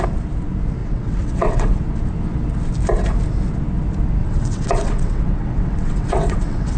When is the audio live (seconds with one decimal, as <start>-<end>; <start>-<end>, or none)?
0.0-0.8; 1.8-4.2